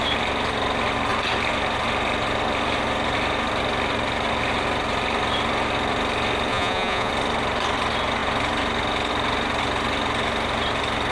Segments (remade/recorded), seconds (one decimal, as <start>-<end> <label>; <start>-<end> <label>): 0.0-6.5 recorded; 6.5-7.1 remade; 7.1-11.1 recorded